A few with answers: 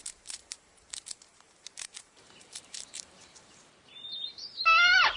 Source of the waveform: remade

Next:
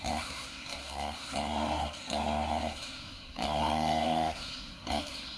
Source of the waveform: remade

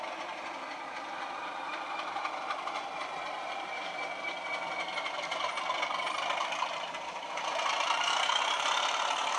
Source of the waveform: remade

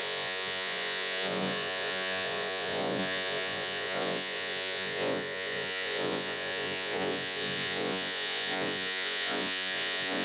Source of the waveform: remade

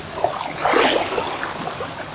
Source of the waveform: recorded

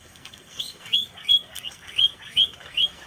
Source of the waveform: remade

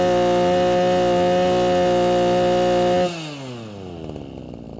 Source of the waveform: recorded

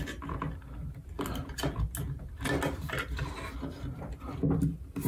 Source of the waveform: recorded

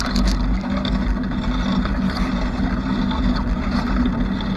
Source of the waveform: recorded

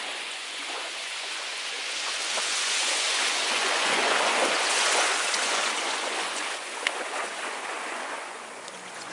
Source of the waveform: remade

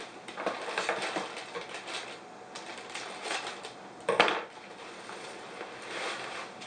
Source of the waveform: recorded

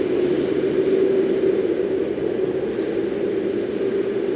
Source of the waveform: recorded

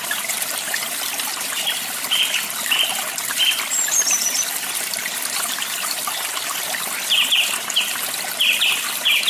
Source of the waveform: remade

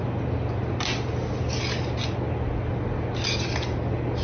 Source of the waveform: recorded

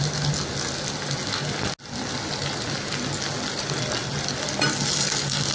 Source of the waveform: recorded